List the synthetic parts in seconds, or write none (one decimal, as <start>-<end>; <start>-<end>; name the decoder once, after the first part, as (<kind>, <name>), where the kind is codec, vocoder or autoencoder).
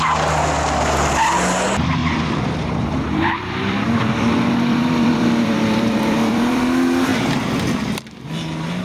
2.0-6.6 (vocoder, BigVGAN v2); 7.1-8.0